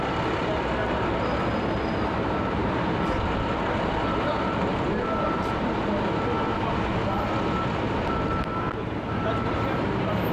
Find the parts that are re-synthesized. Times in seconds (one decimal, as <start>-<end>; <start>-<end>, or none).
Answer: none